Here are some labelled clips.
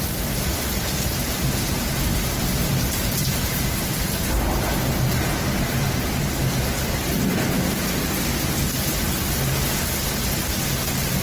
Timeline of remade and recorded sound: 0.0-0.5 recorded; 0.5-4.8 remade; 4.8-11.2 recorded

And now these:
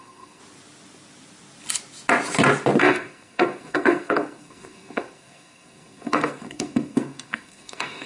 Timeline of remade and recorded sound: 0.0-0.4 remade; 0.4-2.8 recorded; 2.8-8.1 remade